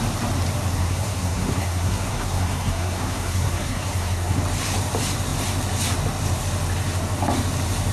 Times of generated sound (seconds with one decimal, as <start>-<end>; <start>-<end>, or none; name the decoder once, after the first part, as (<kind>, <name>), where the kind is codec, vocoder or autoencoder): 0.8-4.4 (codec, SNAC)